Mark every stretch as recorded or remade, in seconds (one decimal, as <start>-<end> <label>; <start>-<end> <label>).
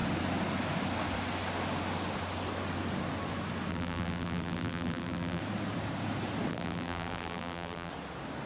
0.0-3.7 recorded; 3.7-5.4 remade; 5.4-6.5 recorded; 6.5-7.9 remade; 7.9-8.5 recorded